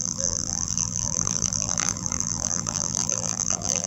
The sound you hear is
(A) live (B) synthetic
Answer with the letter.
B